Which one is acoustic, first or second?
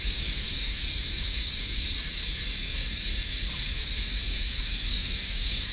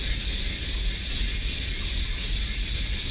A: second